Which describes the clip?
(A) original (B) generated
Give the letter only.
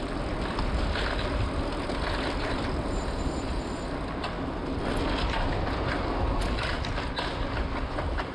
A